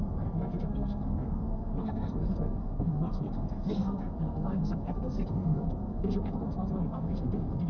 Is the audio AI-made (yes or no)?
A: yes